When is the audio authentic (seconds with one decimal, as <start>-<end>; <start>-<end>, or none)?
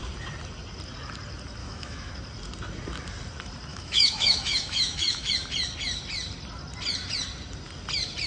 0.0-1.6; 2.1-3.7; 5.3-8.3